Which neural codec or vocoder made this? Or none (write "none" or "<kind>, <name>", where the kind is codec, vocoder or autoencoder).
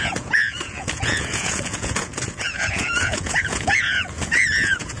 vocoder, Vocos